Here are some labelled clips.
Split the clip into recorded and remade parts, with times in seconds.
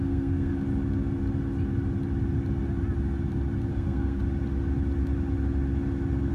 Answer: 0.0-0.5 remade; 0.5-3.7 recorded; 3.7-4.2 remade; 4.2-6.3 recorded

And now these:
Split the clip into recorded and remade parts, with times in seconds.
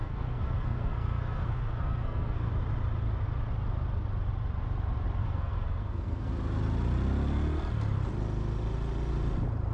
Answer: 0.0-2.5 remade; 2.5-5.2 recorded; 5.2-6.3 remade; 6.3-9.7 recorded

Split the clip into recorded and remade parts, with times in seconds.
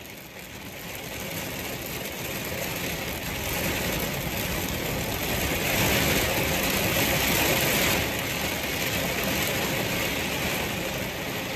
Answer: 0.0-11.6 recorded